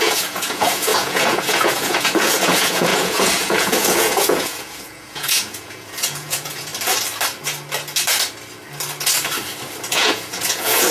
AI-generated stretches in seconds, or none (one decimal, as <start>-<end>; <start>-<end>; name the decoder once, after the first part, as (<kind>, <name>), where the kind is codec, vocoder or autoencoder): 0.0-6.7 (vocoder, Vocos); 9.9-10.9